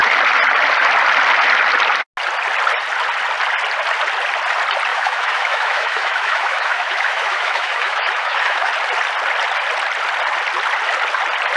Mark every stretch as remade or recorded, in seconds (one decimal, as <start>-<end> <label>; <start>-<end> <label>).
0.0-4.9 recorded; 4.9-8.7 remade; 8.7-11.6 recorded